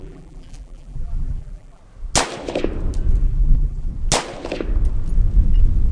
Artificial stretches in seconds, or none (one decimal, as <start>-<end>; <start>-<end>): 0.0-1.8; 3.2-3.9